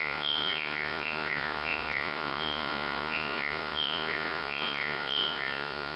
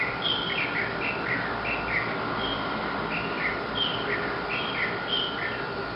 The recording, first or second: second